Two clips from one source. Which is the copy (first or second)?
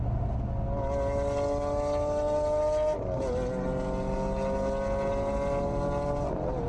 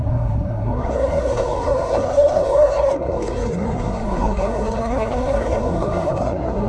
second